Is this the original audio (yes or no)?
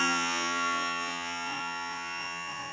no